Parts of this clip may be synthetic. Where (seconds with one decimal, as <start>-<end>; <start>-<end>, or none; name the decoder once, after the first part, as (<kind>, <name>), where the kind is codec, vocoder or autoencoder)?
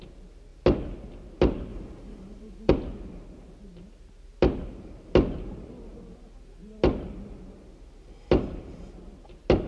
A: 1.7-2.7 (vocoder, BigVGAN v2)